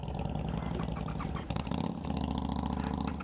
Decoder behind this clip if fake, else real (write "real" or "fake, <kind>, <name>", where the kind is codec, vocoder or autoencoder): real